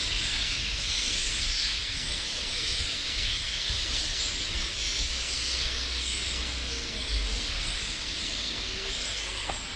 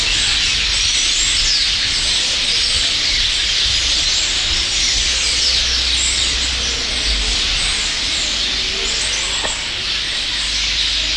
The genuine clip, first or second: second